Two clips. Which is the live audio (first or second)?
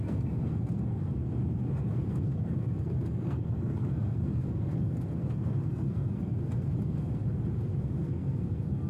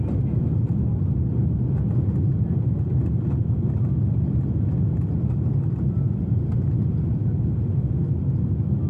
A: second